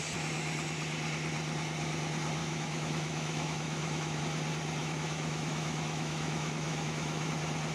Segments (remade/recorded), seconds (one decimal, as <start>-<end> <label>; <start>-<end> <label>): 0.0-2.4 recorded; 2.4-4.2 remade; 4.2-4.8 recorded; 4.8-7.3 remade; 7.3-7.7 recorded